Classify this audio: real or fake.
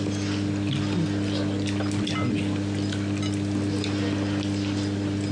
real